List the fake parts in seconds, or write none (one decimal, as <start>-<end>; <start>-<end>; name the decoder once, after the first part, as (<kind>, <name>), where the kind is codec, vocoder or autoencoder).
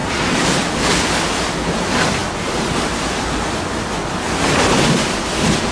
0.0-2.2 (vocoder, BigVGAN v2); 4.0-5.7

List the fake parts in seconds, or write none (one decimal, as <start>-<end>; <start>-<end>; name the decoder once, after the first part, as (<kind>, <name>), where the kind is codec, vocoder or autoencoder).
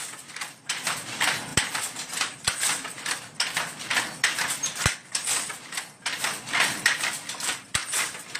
0.0-1.5 (vocoder, BigVGAN v2); 6.5-7.8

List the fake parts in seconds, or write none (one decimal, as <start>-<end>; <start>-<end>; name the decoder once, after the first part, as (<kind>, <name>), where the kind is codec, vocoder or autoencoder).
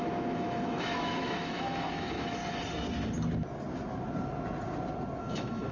0.0-2.4 (autoencoder, DAC-VAE); 5.2-5.7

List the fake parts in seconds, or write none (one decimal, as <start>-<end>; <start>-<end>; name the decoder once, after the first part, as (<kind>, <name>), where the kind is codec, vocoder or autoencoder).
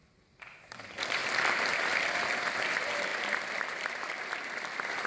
1.2-1.7 (vocoder, BigVGAN v2); 3.1-4.2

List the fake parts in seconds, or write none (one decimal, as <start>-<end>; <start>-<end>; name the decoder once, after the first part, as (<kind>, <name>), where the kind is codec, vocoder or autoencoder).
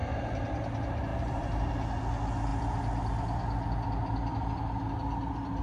0.0-0.5 (vocoder, BigVGAN v2); 1.1-1.7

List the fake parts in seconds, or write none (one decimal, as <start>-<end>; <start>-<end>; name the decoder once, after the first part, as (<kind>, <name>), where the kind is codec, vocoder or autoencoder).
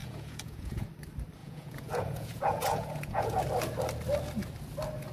0.0-0.9 (vocoder, Vocos); 1.4-3.4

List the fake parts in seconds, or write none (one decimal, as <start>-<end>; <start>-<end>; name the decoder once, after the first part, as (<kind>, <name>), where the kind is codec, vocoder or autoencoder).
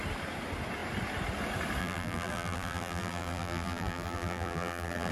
1.8-5.1 (vocoder, BigVGAN v2)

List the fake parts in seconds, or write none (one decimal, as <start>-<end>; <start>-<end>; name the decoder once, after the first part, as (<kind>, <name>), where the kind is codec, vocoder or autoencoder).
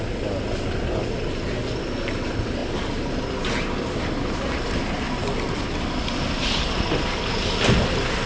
none